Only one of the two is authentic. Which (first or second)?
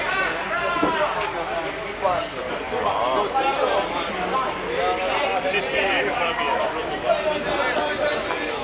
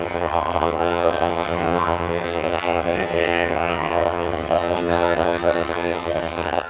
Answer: first